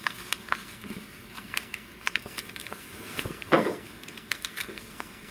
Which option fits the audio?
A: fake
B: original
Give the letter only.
A